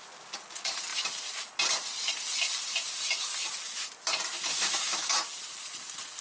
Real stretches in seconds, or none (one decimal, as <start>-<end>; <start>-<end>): 0.0-4.5; 5.1-6.2